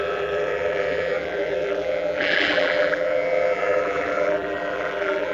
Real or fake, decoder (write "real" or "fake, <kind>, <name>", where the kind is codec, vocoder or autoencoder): fake, vocoder, BigVGAN v2